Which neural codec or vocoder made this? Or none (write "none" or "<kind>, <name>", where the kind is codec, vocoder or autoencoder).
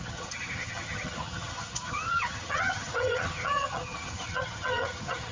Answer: vocoder, HiFi-GAN